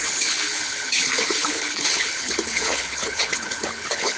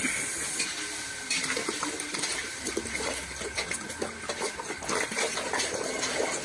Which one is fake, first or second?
first